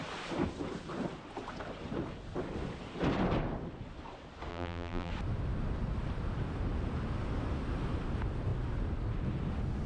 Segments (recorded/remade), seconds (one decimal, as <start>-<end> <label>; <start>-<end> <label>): 0.0-4.5 recorded; 4.5-5.1 remade; 5.1-9.9 recorded